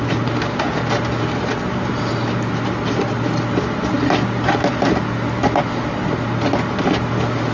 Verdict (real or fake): real